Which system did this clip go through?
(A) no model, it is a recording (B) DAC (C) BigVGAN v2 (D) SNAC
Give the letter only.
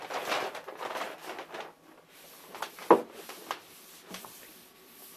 A